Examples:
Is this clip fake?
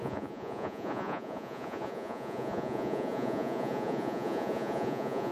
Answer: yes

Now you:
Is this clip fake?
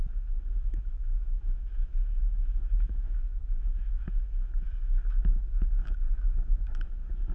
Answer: yes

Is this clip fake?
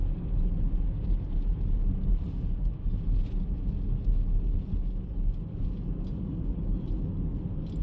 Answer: no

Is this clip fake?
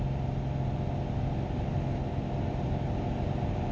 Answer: no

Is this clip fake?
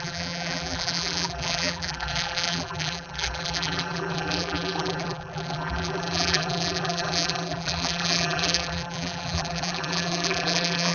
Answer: yes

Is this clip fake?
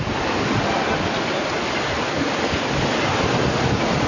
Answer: no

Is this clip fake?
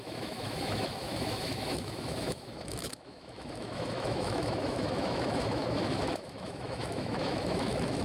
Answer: yes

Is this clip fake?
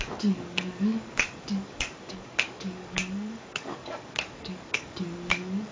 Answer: yes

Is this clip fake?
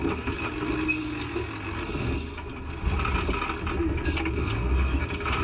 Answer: no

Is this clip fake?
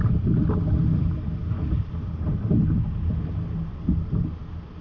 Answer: no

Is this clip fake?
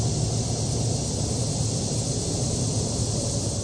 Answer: no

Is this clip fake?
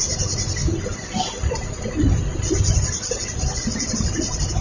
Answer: yes